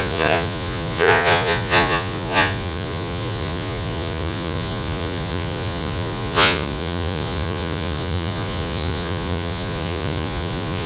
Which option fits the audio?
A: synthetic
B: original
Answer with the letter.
A